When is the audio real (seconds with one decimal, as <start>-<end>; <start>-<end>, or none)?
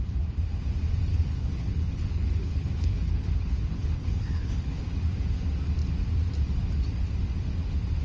0.0-1.1; 4.8-8.0